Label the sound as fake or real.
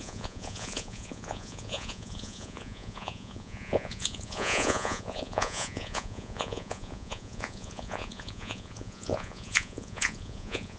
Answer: fake